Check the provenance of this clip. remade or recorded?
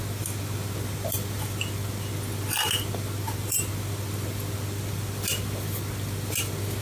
recorded